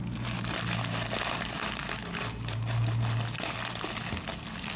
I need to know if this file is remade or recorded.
remade